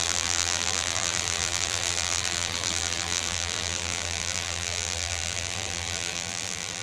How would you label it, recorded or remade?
remade